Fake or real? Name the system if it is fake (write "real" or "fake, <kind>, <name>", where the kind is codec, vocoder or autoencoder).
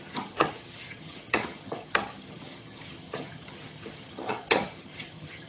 fake, vocoder, HiFi-GAN